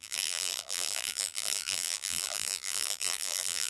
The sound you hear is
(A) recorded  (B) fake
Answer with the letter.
B